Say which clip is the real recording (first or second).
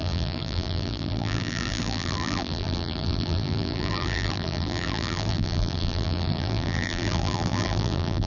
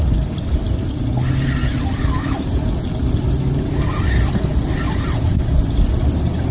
second